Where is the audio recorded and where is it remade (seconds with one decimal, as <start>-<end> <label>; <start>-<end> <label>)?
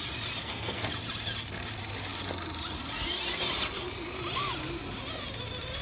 0.0-0.4 recorded; 0.4-0.9 remade; 0.9-5.8 recorded